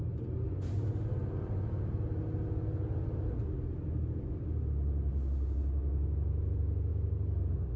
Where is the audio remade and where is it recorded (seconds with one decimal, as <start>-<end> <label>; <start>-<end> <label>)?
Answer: 0.0-1.2 recorded; 1.2-1.9 remade; 1.9-7.8 recorded